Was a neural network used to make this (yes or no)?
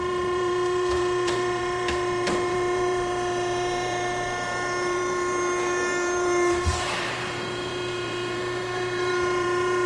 yes